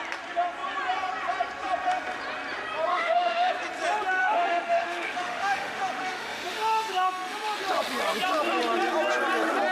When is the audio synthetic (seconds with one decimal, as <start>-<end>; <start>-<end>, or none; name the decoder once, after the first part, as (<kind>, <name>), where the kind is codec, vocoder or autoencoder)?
2.9-3.5 (autoencoder, DAC-VAE); 4.2-7.6